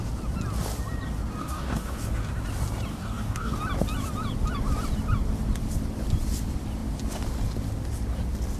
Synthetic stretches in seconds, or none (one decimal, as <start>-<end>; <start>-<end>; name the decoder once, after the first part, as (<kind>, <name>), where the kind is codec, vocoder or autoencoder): 1.4-2.3 (codec, DAC); 2.9-3.6